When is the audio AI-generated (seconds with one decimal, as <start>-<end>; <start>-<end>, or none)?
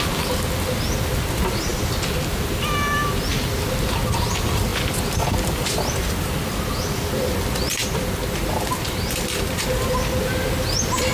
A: none